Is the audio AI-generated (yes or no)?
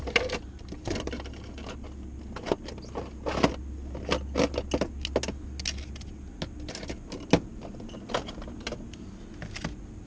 no